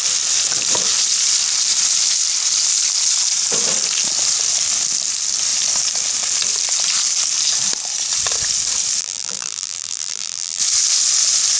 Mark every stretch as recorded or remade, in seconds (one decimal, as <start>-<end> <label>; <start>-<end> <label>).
0.0-9.0 recorded; 9.0-10.6 remade; 10.6-11.6 recorded